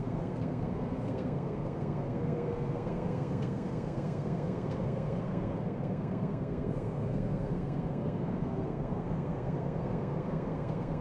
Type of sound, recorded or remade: remade